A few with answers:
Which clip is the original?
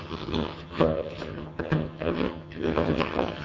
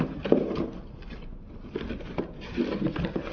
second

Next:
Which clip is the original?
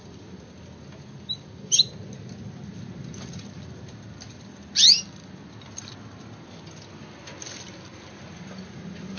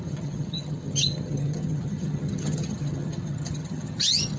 first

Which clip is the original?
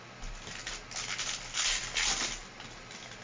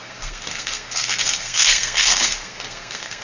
first